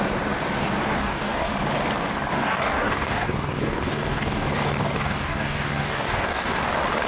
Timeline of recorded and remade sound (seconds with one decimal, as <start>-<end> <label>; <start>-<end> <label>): 0.0-1.0 recorded; 1.0-1.5 remade; 1.5-2.3 recorded; 2.3-6.6 remade; 6.6-7.1 recorded